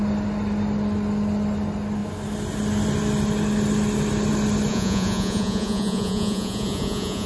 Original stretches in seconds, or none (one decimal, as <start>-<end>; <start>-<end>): 0.0-4.7